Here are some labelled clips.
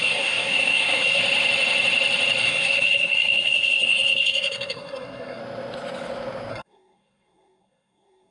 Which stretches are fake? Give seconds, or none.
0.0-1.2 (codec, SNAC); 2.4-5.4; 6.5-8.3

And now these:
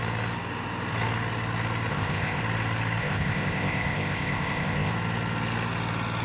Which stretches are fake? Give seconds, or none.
1.9-2.4 (codec, ZipCodec); 3.0-4.9

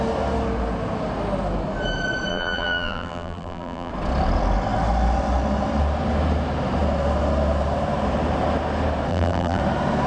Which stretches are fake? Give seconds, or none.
2.3-3.9 (vocoder, BigVGAN v2); 9.1-9.6